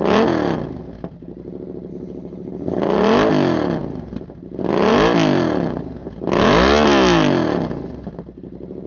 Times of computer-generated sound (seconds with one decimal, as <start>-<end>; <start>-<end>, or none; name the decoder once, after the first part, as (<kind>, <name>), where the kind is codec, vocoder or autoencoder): 1.9-2.8 (codec, HILCodec)